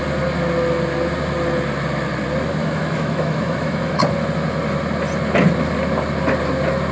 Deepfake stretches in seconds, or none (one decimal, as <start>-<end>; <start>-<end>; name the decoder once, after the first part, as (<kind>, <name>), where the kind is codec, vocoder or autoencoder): 2.6-4.0 (autoencoder, DAC-VAE)